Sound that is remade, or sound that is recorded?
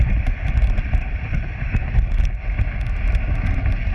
recorded